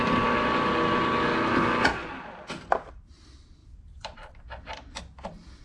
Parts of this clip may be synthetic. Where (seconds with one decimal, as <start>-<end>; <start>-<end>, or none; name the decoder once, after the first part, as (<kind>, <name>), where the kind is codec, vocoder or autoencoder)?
3.6-4.4 (vocoder, BigVGAN v2)